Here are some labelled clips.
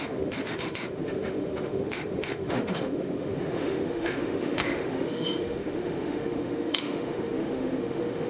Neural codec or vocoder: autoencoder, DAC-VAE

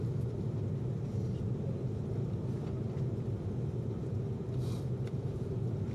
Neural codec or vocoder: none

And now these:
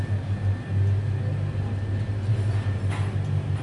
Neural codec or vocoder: none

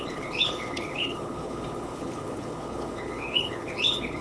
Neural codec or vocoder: codec, HILCodec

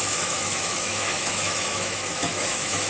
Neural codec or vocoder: autoencoder, DAC-VAE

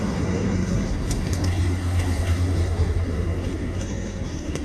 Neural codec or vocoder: codec, SNAC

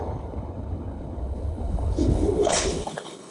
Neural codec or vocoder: codec, HILCodec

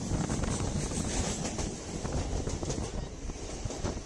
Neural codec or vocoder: vocoder, BigVGAN v2